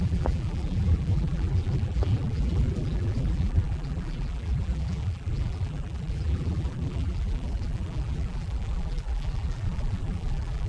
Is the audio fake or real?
fake